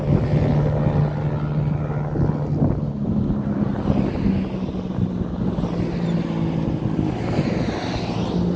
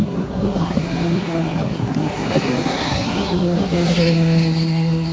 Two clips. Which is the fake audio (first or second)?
second